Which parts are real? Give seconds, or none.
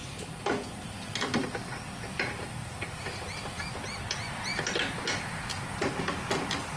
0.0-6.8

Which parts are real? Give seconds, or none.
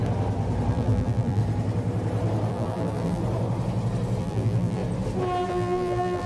0.0-0.7; 1.4-2.5; 3.2-4.2; 4.8-5.5